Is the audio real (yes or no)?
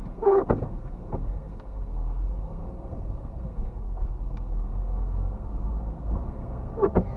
no